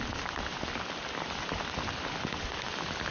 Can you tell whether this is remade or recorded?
recorded